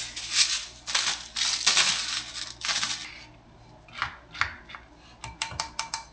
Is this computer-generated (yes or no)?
no